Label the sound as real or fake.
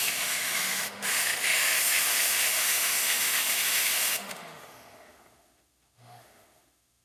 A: fake